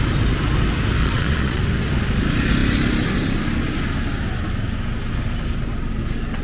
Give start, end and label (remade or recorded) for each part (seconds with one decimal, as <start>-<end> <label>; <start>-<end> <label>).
0.0-1.0 recorded; 1.0-1.6 remade; 1.6-6.4 recorded